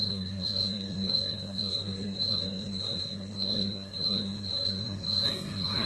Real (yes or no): no